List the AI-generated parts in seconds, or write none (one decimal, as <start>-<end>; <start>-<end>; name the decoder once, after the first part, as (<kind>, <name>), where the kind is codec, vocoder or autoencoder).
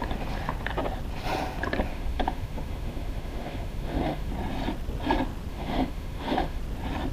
1.9-4.3 (autoencoder, DAC-VAE); 5.5-6.6